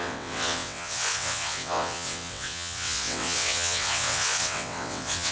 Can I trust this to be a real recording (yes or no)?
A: no